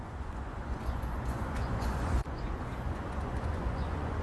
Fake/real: fake